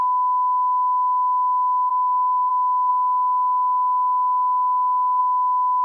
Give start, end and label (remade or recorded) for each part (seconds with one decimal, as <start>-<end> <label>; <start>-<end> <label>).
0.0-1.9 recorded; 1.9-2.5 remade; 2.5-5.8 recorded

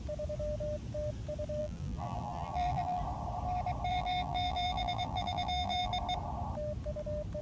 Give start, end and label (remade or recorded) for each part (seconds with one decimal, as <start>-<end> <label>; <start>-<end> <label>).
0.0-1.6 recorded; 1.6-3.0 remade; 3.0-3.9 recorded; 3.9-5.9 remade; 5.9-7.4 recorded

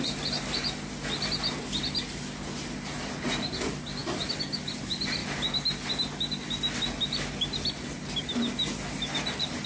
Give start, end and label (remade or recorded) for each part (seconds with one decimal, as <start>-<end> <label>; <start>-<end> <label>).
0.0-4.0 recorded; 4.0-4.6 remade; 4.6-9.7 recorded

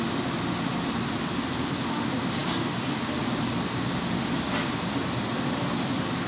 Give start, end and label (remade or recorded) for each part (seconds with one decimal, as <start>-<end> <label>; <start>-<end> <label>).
0.0-6.3 recorded

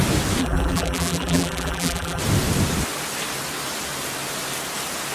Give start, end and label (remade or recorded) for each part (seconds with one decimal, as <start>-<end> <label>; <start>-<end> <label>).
0.0-0.4 recorded; 0.4-2.2 remade; 2.2-5.1 recorded